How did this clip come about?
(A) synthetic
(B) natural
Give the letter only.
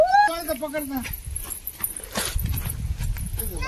B